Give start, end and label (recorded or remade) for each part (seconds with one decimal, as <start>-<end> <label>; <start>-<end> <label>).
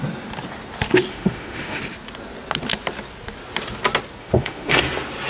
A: 0.0-1.1 recorded; 1.1-1.8 remade; 1.8-4.2 recorded; 4.2-4.8 remade; 4.8-5.3 recorded